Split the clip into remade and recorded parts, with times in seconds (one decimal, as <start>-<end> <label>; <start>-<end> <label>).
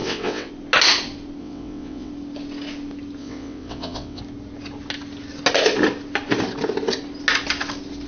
0.0-0.5 remade; 0.5-1.4 recorded; 1.4-2.1 remade; 2.1-3.2 recorded; 3.2-4.2 remade; 4.2-8.1 recorded